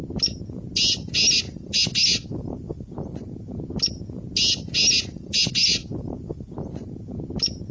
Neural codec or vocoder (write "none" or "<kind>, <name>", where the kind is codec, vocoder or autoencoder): none